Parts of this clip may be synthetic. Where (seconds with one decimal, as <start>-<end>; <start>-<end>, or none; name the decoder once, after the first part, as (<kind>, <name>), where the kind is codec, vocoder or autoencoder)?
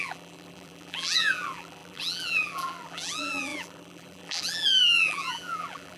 0.0-6.0 (vocoder, BigVGAN v2)